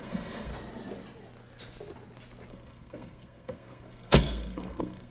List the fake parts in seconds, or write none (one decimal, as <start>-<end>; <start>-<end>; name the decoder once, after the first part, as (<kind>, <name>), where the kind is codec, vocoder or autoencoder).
0.0-0.5 (codec, SNAC); 2.5-5.1